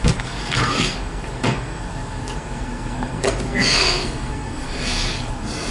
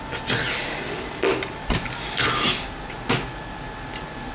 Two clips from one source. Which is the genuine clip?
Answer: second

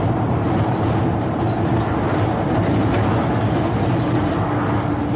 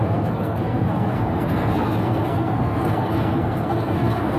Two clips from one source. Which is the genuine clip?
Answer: first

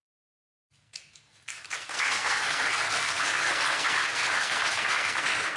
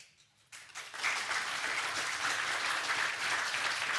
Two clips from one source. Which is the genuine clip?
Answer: second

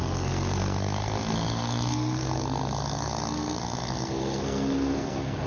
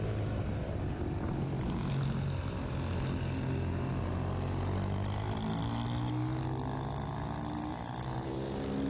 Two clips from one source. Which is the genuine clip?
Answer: second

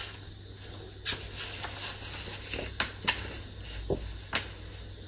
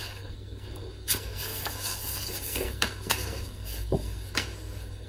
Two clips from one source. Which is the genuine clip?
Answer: first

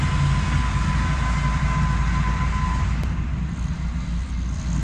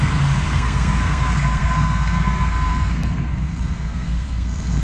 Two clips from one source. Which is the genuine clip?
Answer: first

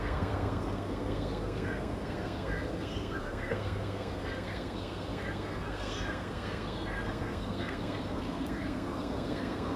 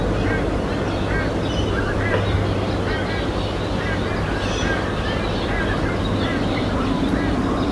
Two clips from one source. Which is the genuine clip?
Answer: second